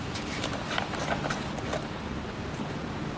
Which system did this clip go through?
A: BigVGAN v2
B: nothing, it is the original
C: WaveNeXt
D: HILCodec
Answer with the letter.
B